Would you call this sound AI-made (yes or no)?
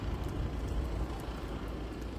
yes